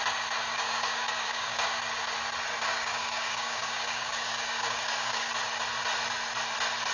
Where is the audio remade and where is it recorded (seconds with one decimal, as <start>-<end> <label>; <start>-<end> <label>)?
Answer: 0.0-0.5 recorded; 0.5-1.8 remade; 1.8-2.5 recorded; 2.5-5.3 remade; 5.3-6.9 recorded